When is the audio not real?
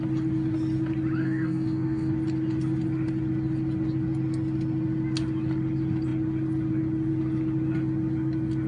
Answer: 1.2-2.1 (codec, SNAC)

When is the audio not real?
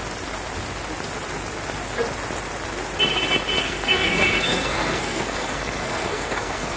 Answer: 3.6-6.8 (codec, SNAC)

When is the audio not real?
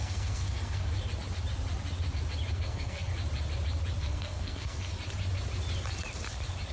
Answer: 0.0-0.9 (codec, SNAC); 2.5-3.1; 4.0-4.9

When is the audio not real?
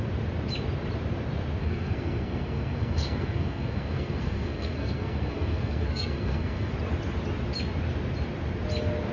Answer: 1.6-6.7 (codec, SNAC)